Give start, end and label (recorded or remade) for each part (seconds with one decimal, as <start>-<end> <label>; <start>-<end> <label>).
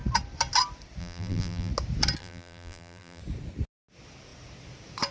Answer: 0.0-1.0 recorded; 1.0-1.7 remade; 1.7-2.2 recorded; 2.2-3.2 remade; 3.2-5.1 recorded